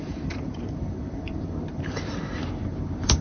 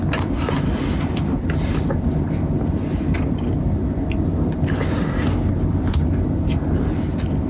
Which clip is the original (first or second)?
second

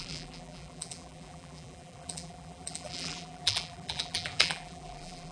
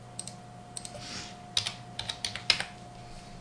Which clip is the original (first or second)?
second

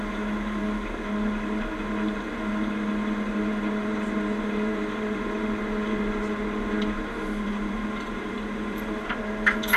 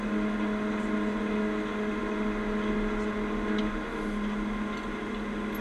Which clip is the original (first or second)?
second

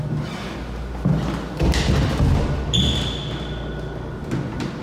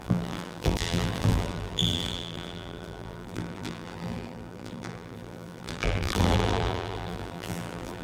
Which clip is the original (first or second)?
first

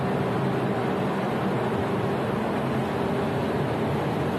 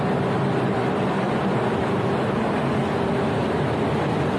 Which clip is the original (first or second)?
first